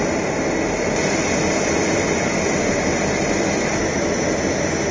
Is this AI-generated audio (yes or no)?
no